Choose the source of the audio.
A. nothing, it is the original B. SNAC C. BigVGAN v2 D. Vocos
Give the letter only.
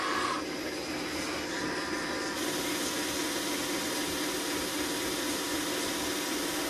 A